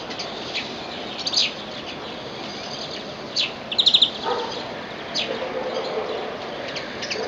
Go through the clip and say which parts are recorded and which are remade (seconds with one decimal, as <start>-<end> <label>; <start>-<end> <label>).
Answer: 0.0-7.3 recorded